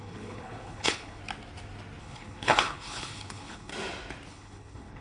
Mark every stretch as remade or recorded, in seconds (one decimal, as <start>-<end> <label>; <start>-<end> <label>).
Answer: 0.0-1.2 remade; 1.2-2.0 recorded; 2.0-3.7 remade; 3.7-4.3 recorded; 4.3-5.0 remade